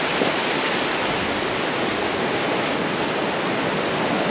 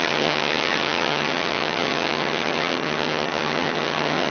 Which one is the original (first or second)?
first